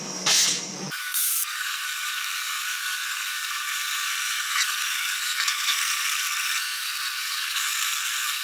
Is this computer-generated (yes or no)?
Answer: yes